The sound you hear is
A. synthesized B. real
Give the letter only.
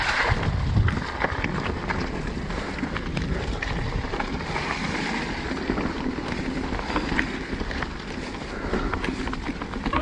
B